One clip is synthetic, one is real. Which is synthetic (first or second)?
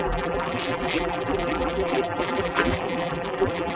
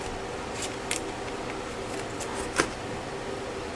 first